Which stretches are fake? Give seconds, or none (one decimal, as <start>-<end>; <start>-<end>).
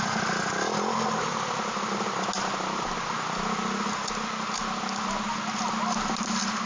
none